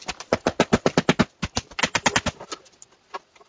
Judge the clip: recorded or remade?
recorded